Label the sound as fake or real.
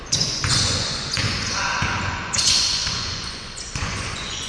fake